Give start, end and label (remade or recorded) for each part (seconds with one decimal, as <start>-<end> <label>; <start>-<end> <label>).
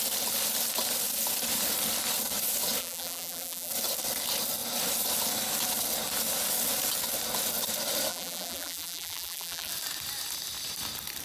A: 0.0-2.8 recorded; 2.8-3.7 remade; 3.7-8.1 recorded; 8.1-9.7 remade; 9.7-11.2 recorded